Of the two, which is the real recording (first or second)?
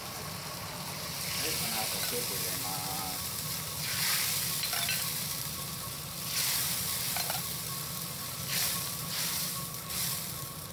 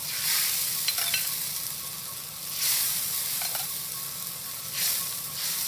second